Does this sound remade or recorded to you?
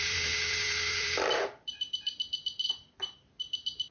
remade